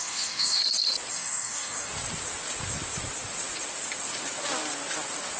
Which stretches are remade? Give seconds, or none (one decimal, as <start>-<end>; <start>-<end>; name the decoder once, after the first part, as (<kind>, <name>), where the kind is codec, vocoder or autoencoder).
0.0-0.6 (codec, DAC); 1.1-1.9